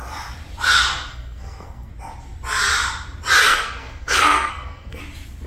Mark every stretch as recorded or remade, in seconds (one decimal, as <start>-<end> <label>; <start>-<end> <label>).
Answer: 0.0-1.1 recorded; 1.1-1.9 remade; 1.9-3.4 recorded; 3.4-5.0 remade; 5.0-5.5 recorded